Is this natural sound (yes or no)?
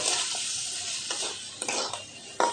yes